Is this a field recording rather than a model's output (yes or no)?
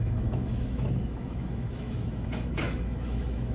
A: no